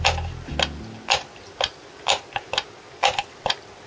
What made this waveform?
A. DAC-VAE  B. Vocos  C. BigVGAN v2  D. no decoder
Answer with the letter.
D